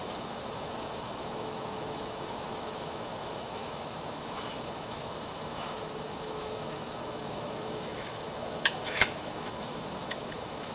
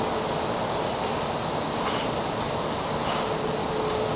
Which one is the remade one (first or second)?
first